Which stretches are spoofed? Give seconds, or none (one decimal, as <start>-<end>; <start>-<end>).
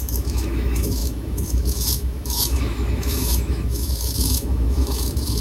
0.0-5.4